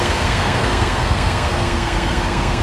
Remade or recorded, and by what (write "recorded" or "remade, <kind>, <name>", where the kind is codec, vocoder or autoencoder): remade, codec, SNAC